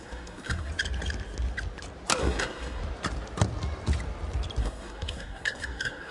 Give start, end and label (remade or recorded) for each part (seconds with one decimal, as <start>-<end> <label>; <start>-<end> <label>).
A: 0.0-0.7 remade; 0.7-2.2 recorded; 2.2-2.8 remade; 2.8-4.6 recorded; 4.6-6.1 remade